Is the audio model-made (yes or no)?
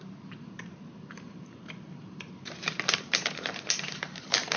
yes